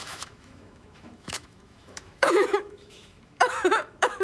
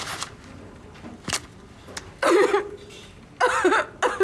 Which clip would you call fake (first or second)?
first